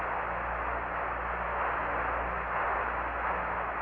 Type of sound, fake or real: real